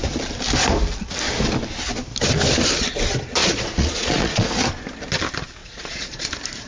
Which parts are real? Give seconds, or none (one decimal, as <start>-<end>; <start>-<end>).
0.0-3.4; 4.6-5.6; 6.3-6.7